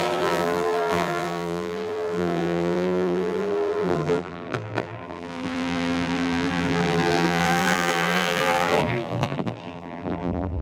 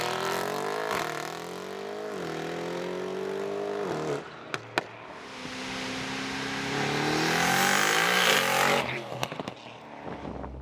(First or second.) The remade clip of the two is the first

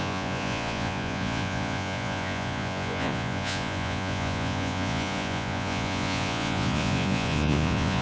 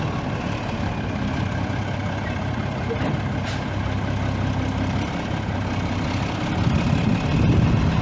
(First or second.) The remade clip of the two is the first